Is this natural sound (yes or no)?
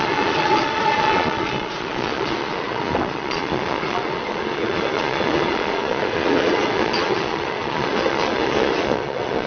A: no